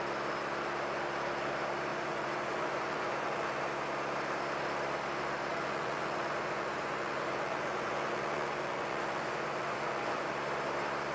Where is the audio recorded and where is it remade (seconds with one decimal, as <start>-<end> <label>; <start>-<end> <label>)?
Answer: 0.0-1.9 recorded; 1.9-3.6 remade; 3.6-5.5 recorded; 5.5-10.3 remade; 10.3-11.1 recorded